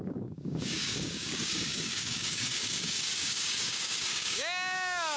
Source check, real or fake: fake